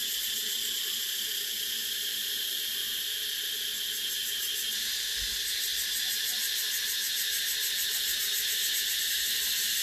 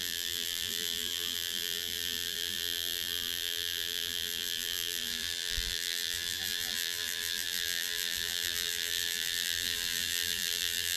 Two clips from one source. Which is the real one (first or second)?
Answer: first